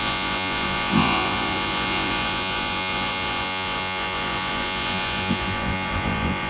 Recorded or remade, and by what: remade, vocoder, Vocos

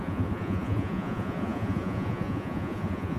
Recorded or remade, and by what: remade, vocoder, Vocos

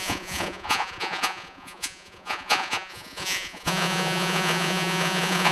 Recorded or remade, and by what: remade, vocoder, Vocos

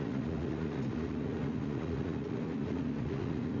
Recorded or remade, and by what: remade, vocoder, Vocos